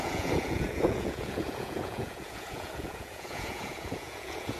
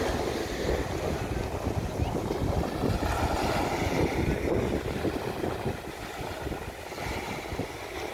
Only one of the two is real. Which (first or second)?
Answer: second